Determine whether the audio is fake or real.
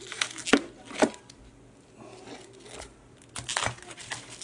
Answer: real